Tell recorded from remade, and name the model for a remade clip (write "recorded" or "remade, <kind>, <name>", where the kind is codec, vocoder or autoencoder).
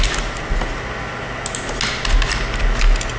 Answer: recorded